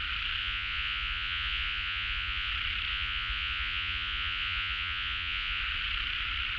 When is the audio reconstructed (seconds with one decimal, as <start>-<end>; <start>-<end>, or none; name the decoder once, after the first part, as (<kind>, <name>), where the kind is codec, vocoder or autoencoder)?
0.4-2.5 (vocoder, Vocos); 2.9-5.6